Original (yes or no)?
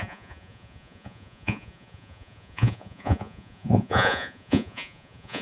no